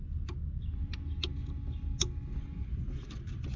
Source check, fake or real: real